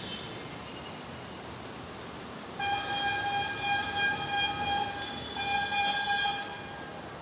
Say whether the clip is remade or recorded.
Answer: recorded